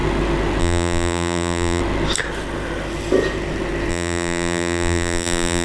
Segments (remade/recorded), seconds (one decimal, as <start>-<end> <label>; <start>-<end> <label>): 0.0-0.6 recorded; 0.6-1.8 remade; 1.8-3.9 recorded; 3.9-5.6 remade